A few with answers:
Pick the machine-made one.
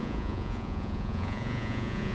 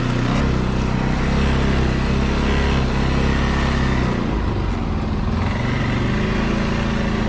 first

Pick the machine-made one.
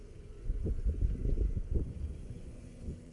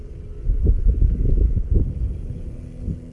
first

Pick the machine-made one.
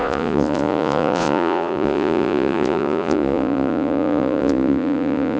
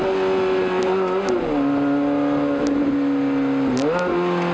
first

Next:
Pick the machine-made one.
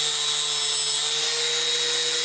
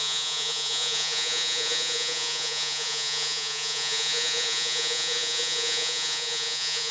second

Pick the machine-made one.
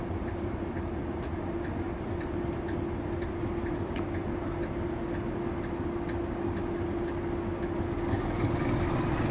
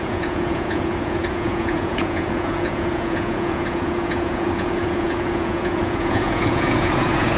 second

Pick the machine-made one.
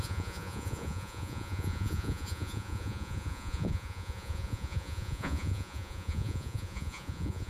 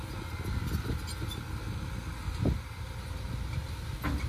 first